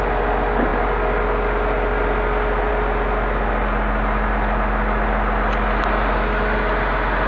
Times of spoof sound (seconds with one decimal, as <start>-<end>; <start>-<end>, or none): none